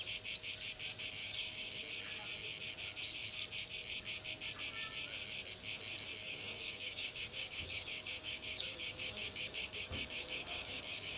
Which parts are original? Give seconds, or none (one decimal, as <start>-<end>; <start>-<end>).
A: 0.0-1.2; 1.8-6.2